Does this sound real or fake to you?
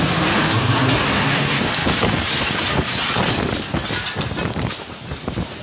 real